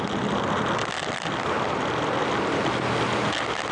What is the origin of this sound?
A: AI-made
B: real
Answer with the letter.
B